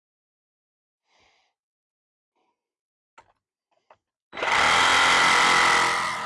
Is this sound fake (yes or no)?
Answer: no